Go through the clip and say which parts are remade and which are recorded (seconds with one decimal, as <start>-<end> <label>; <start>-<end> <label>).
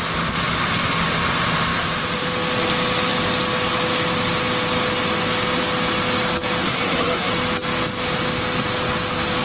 0.0-6.6 recorded; 6.6-7.3 remade; 7.3-9.4 recorded